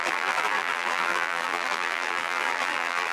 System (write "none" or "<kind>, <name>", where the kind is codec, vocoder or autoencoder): vocoder, BigVGAN v2